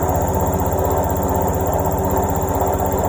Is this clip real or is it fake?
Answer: real